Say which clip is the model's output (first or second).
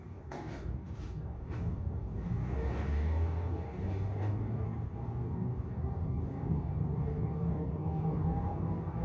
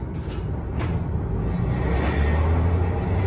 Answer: first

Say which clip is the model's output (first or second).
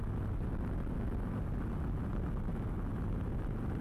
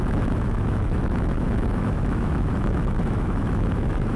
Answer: second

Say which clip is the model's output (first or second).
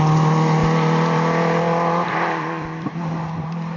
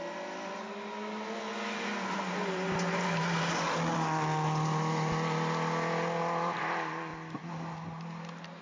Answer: first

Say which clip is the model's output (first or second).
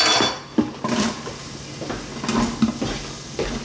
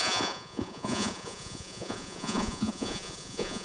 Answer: second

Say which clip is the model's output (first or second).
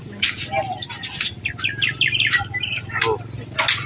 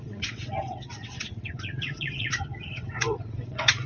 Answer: second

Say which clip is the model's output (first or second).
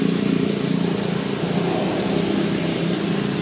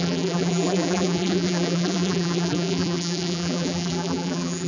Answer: second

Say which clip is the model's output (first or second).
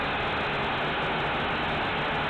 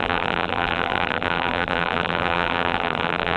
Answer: second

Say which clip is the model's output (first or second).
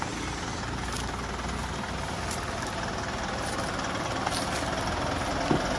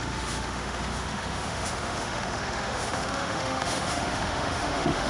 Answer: second